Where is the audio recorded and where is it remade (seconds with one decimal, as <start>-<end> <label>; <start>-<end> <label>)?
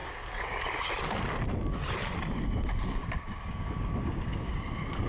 0.0-0.6 remade; 0.6-2.8 recorded; 2.8-4.5 remade; 4.5-5.1 recorded